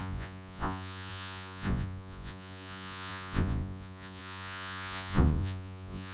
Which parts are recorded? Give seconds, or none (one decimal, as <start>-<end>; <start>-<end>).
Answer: none